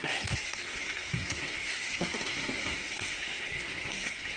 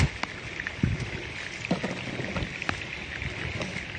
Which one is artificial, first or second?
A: first